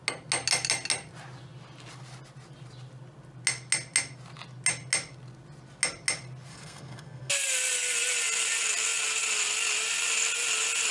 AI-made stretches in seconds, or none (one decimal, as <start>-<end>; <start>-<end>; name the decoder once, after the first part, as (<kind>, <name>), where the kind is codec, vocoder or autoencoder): 6.5-7.3 (codec, SNAC)